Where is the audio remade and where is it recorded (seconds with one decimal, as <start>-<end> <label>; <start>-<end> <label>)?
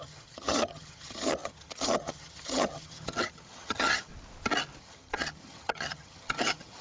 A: 0.0-4.1 remade; 4.1-4.8 recorded; 4.8-6.8 remade